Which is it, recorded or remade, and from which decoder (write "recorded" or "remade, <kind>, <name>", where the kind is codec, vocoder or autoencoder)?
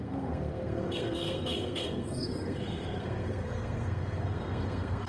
remade, codec, SNAC